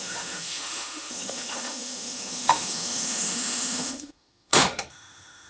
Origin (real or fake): fake